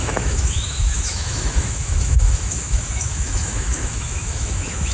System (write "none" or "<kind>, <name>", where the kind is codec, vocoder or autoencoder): autoencoder, DAC-VAE